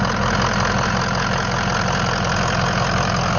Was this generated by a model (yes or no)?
no